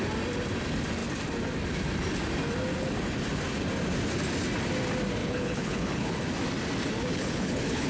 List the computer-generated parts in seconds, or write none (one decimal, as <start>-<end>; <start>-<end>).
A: 5.2-6.1; 7.1-7.9